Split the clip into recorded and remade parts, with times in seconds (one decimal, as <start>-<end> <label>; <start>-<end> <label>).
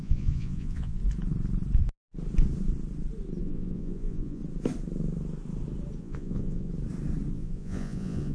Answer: 0.0-1.0 remade; 1.0-3.4 recorded; 3.4-4.4 remade; 4.4-6.0 recorded; 6.0-6.7 remade; 6.7-7.3 recorded; 7.3-8.3 remade